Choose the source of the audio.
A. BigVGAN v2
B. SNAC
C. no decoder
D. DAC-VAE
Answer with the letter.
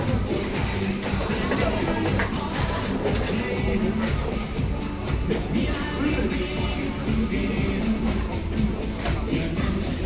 C